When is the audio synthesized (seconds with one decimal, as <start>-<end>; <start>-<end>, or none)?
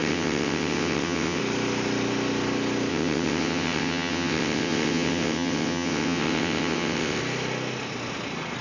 0.0-1.4; 2.9-7.2